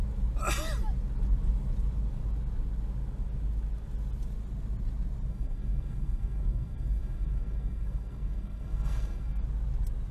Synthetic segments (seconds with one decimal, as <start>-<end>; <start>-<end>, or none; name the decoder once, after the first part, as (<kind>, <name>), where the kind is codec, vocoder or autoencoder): 5.3-9.4 (codec, SNAC)